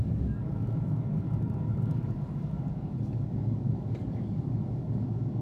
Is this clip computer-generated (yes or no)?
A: yes